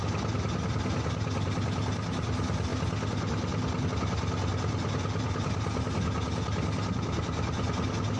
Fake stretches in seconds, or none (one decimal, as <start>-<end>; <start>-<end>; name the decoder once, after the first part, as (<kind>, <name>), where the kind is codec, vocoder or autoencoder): none